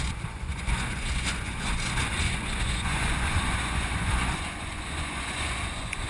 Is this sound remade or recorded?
remade